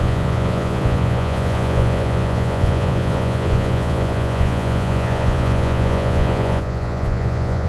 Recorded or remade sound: remade